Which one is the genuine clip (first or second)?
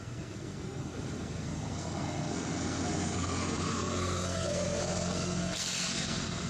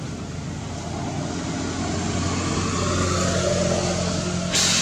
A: second